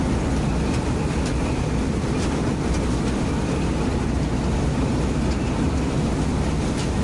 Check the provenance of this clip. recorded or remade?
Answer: recorded